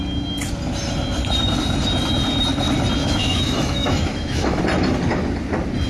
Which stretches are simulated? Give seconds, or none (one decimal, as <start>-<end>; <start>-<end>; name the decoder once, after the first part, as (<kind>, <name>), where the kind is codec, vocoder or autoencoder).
3.0-4.6 (autoencoder, DAC-VAE)